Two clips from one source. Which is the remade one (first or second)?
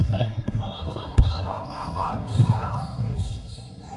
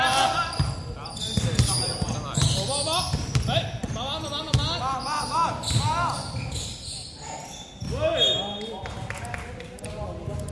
first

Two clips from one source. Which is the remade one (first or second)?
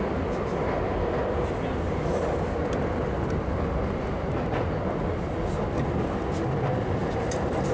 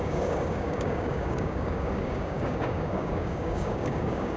second